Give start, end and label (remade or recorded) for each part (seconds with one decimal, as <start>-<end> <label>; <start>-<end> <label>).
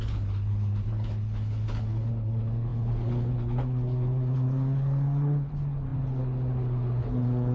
0.0-7.5 remade